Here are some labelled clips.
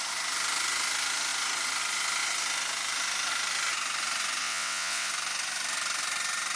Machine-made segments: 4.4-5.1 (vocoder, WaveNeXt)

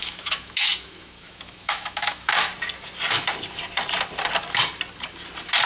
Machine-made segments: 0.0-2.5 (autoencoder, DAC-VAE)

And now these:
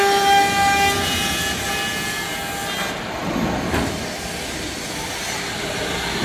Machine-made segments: none